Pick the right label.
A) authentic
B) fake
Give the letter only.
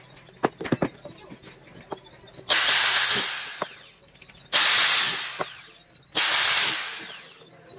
A